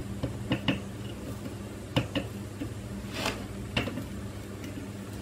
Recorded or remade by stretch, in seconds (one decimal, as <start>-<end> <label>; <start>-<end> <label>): 0.0-1.9 recorded; 1.9-3.0 remade; 3.0-5.2 recorded